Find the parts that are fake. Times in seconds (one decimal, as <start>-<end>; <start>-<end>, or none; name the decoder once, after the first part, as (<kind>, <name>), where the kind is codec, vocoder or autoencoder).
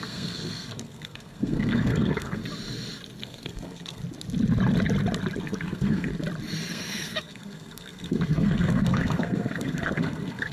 0.0-2.4 (codec, SNAC); 3.2-4.0; 5.4-6.1; 6.7-10.5